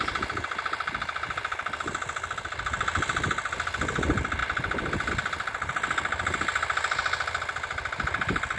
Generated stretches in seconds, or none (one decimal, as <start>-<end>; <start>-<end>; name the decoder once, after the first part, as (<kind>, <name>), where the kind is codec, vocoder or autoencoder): none